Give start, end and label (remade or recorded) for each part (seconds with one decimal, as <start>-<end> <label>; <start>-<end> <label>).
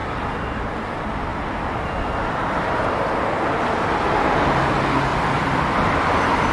0.0-1.3 recorded; 1.3-4.1 remade; 4.1-5.1 recorded; 5.1-6.1 remade; 6.1-6.5 recorded